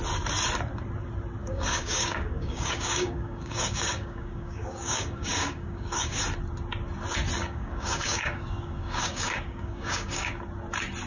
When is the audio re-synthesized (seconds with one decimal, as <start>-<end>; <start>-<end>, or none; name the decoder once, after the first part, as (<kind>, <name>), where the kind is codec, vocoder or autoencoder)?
1.4-6.2 (codec, DAC); 7.4-10.4